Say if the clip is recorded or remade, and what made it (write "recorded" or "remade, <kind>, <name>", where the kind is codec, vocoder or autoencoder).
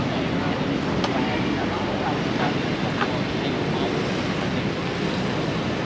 recorded